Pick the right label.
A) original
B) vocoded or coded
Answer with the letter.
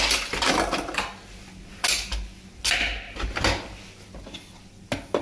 A